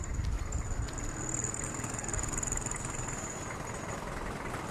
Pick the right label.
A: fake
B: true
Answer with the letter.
B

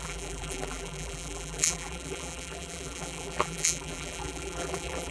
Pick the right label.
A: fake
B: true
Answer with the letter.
A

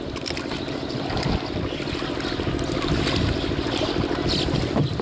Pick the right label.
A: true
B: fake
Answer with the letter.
A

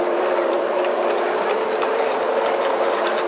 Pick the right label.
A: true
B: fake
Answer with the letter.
B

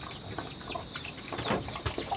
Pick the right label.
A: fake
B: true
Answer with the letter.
B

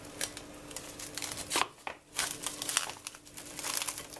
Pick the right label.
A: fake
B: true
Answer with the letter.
B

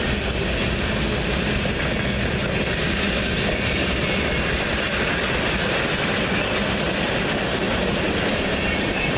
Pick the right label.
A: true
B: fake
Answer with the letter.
A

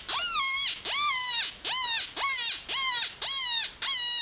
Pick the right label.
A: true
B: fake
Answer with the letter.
A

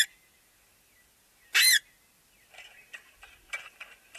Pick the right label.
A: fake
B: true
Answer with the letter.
B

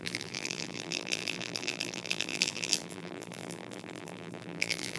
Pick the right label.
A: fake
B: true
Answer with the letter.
A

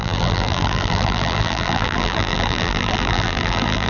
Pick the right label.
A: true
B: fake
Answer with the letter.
B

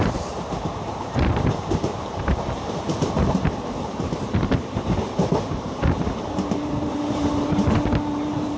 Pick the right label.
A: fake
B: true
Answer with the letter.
A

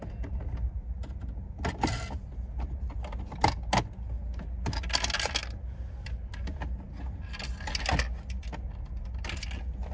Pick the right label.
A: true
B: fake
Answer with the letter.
A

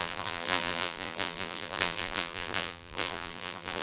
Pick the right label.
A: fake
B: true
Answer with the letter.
A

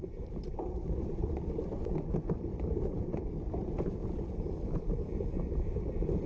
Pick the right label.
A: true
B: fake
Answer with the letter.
B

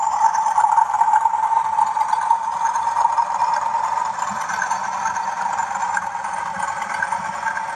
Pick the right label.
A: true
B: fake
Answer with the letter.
B